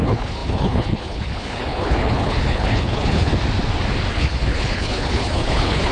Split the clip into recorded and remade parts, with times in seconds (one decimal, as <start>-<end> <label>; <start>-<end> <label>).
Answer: 0.0-3.3 remade; 3.3-4.1 recorded; 4.1-5.9 remade

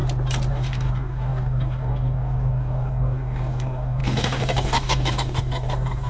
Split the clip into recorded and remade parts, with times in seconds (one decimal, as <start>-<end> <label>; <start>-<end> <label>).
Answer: 0.0-0.5 recorded; 0.5-6.1 remade

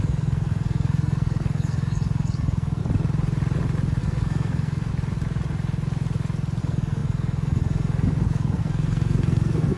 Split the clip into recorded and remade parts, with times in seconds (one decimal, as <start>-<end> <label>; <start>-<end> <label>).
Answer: 0.0-2.8 remade; 2.8-4.0 recorded; 4.0-4.9 remade; 4.9-6.6 recorded; 6.6-9.8 remade

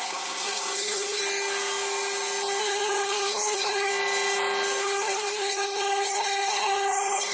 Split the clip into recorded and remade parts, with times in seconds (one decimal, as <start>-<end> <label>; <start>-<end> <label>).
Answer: 0.0-1.2 remade; 1.2-2.6 recorded; 2.6-3.9 remade; 3.9-4.8 recorded; 4.8-7.3 remade